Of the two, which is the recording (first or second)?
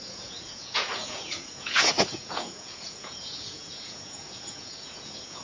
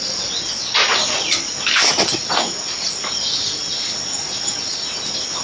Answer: second